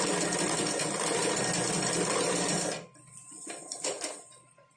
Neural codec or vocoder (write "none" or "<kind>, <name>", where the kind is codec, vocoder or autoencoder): none